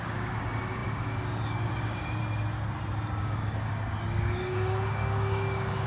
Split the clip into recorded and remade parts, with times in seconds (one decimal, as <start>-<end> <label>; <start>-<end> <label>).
0.0-2.2 remade; 2.2-3.2 recorded; 3.2-5.9 remade